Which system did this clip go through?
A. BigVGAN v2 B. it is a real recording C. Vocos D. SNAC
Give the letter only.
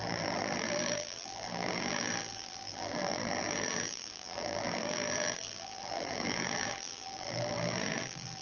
A